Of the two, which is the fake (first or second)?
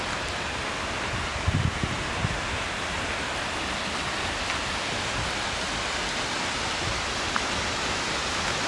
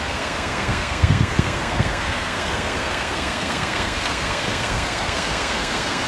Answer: second